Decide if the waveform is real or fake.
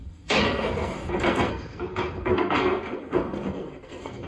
fake